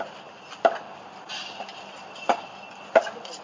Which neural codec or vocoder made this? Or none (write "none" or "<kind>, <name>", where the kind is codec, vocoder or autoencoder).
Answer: none